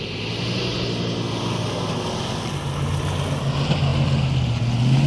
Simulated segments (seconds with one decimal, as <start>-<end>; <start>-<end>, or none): none